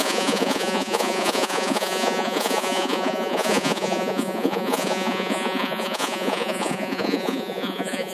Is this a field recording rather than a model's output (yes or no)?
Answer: no